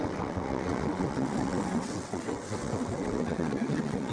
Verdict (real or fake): fake